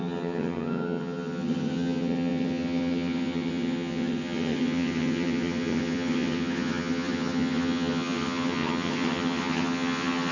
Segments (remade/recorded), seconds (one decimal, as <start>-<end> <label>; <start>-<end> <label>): 0.0-10.3 remade